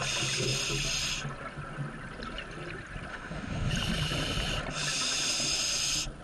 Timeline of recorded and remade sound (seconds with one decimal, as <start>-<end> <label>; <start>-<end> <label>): 0.0-3.1 recorded; 3.1-3.7 remade; 3.7-6.2 recorded